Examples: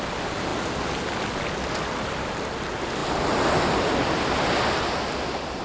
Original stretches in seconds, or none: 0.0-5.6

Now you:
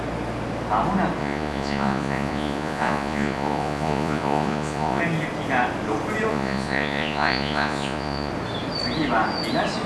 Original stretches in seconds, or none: 0.0-1.2; 5.0-6.3; 8.3-9.9